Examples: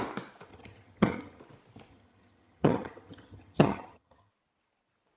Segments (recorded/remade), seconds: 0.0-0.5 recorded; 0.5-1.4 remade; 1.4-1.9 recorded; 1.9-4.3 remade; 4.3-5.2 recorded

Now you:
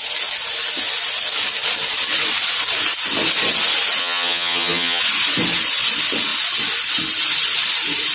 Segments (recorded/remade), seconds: 0.0-4.0 recorded; 4.0-5.0 remade; 5.0-8.1 recorded

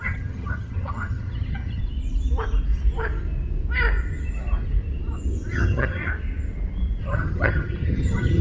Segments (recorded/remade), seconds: 0.0-1.8 remade; 1.8-5.5 recorded; 5.5-6.1 remade; 6.1-7.0 recorded; 7.0-8.4 remade

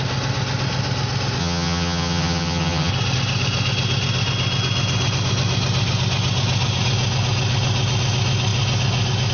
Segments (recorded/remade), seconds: 0.0-1.4 recorded; 1.4-2.9 remade; 2.9-9.3 recorded

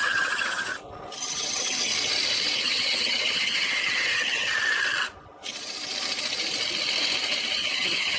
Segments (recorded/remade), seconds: 0.0-0.7 remade; 0.7-1.2 recorded; 1.2-1.9 remade; 1.9-2.6 recorded; 2.6-4.5 remade; 4.5-7.6 recorded; 7.6-8.2 remade

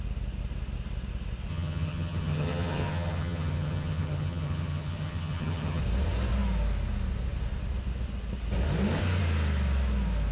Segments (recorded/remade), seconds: 0.0-1.5 recorded; 1.5-5.8 remade; 5.8-10.3 recorded